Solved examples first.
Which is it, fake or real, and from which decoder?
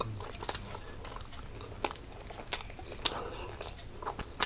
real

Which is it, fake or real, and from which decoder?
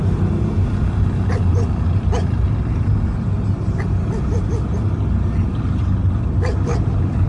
real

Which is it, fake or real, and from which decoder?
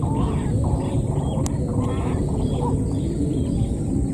real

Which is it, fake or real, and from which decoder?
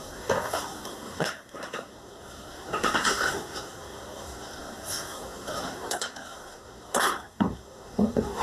fake, codec, SNAC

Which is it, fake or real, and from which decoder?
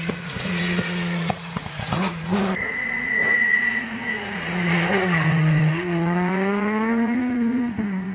fake, vocoder, Vocos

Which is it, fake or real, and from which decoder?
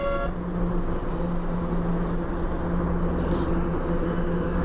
real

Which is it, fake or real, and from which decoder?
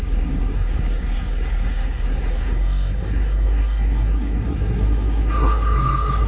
fake, codec, SNAC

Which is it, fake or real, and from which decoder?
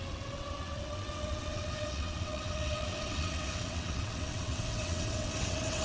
fake, vocoder, WaveNeXt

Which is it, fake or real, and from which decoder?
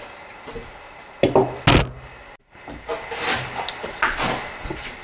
real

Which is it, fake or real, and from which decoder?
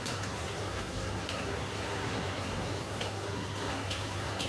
fake, codec, SNAC